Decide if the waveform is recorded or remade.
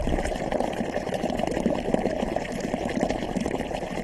recorded